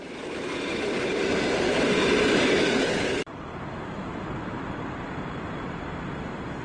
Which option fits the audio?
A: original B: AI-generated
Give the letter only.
B